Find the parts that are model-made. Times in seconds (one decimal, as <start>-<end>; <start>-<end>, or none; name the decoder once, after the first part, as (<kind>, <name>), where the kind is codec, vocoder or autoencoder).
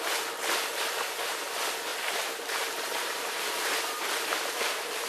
1.9-5.1 (vocoder, BigVGAN v2)